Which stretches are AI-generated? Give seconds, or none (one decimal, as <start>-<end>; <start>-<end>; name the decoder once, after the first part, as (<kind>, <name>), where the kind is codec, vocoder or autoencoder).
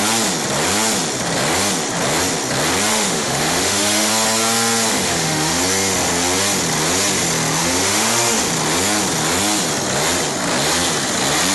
2.9-4.1 (autoencoder, DAC-VAE); 4.9-5.6; 7.6-8.5